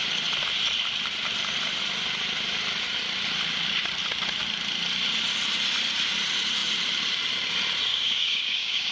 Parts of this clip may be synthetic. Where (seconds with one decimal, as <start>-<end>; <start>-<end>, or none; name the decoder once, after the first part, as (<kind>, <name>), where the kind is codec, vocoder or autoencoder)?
7.9-8.9 (codec, DAC)